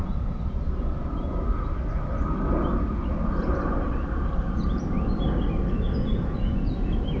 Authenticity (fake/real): real